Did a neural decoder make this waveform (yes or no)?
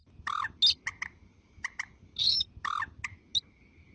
no